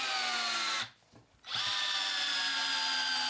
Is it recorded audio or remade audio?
recorded